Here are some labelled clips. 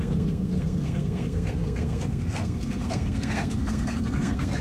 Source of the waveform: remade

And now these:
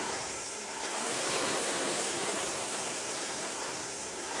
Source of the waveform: remade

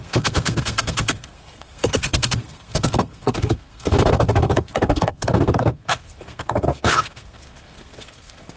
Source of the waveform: remade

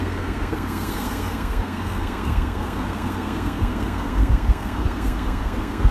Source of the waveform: remade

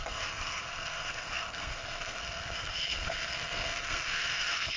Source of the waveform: remade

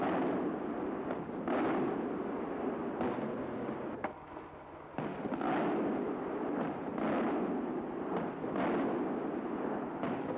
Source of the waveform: recorded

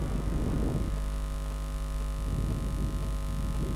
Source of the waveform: recorded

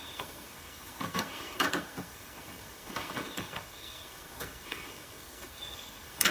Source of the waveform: remade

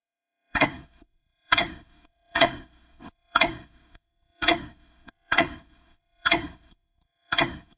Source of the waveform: remade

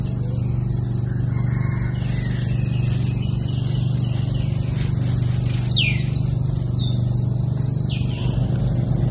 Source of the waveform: recorded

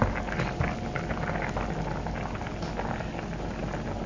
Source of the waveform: recorded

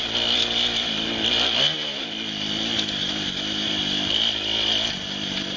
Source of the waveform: recorded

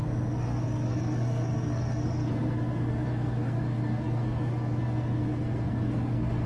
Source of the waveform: remade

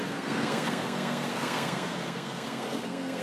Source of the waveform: remade